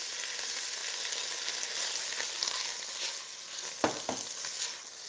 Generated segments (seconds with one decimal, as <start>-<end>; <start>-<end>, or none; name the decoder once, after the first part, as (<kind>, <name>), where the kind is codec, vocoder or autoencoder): none

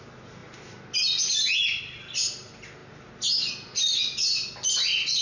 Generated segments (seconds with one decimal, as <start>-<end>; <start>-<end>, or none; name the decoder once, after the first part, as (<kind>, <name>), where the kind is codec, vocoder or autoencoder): none

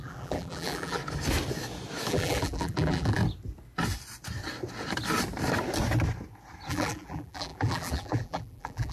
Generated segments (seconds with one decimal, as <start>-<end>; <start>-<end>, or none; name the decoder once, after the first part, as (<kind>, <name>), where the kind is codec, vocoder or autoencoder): 0.0-1.0 (vocoder, BigVGAN v2); 2.1-3.2; 6.7-8.9

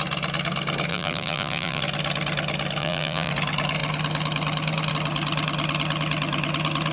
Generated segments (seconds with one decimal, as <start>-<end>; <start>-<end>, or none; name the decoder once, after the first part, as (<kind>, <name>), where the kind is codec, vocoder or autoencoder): 0.9-1.8 (vocoder, BigVGAN v2); 2.8-3.3

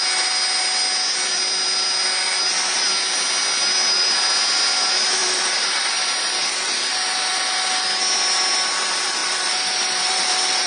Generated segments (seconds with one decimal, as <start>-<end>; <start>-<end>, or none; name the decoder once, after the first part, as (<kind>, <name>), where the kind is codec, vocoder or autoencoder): 5.2-6.1 (vocoder, BigVGAN v2); 9.2-10.7

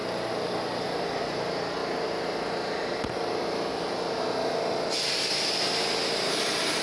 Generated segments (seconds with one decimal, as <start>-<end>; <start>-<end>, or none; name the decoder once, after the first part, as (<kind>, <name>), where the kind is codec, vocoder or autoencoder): 1.2-1.8 (vocoder, BigVGAN v2); 2.9-3.7; 5.8-6.8